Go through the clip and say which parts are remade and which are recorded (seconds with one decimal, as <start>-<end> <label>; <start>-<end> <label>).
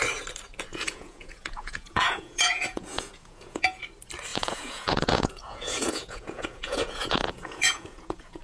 0.0-0.7 recorded; 0.7-3.8 remade; 3.8-4.3 recorded; 4.3-8.4 remade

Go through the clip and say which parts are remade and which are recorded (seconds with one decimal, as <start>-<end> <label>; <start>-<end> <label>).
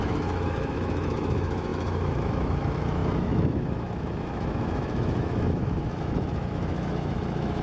0.0-7.6 remade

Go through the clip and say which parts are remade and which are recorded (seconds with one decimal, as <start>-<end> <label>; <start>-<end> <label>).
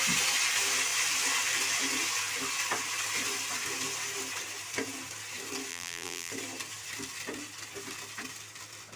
0.0-5.7 recorded; 5.7-6.3 remade; 6.3-9.0 recorded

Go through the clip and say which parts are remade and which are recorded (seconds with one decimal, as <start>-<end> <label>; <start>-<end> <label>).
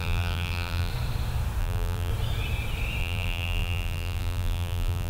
0.0-0.9 remade; 0.9-1.6 recorded; 1.6-2.1 remade; 2.1-3.0 recorded; 3.0-5.1 remade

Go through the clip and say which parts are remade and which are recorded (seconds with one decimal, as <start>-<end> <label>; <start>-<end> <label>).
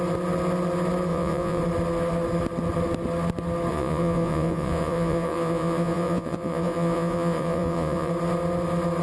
0.0-1.1 recorded; 1.1-1.6 remade; 1.6-3.7 recorded; 3.7-8.1 remade; 8.1-9.0 recorded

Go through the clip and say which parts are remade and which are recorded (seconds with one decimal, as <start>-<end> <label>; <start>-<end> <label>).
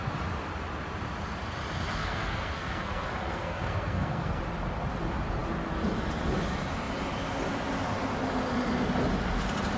0.0-2.0 recorded; 2.0-4.4 remade; 4.4-9.8 recorded